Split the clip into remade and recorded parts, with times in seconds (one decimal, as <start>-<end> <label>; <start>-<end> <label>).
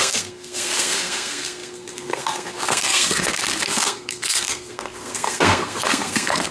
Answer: 0.0-6.5 remade